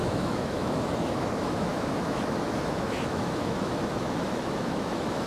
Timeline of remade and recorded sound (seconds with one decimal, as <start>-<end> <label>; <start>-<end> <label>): 0.0-5.3 remade